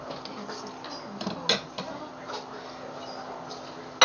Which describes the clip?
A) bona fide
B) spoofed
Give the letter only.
A